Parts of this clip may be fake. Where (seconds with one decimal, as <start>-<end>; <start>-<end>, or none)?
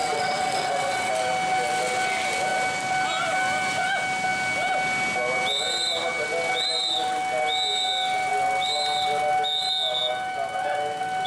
0.0-1.1